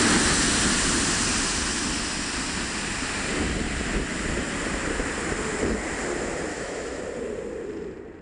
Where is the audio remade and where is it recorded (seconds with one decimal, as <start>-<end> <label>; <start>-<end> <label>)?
0.0-6.5 recorded; 6.5-7.0 remade; 7.0-8.2 recorded